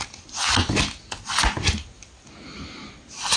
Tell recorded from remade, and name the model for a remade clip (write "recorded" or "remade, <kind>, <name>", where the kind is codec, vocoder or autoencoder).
recorded